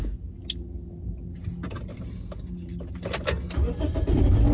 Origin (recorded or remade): recorded